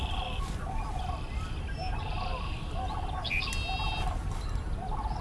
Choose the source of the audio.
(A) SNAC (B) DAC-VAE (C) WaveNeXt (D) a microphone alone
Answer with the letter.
D